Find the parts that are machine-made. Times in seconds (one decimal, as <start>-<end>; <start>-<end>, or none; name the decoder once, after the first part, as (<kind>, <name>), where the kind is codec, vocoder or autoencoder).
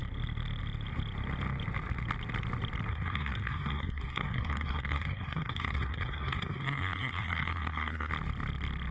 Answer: 2.9-8.1 (codec, SNAC)